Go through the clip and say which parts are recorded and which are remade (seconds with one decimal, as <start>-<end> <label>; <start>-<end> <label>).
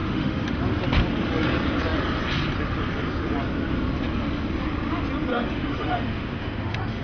0.0-0.6 remade; 0.6-5.3 recorded; 5.3-7.0 remade